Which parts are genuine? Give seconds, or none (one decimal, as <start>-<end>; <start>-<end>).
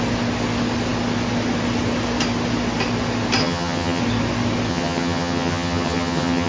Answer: 0.0-3.4; 4.0-4.7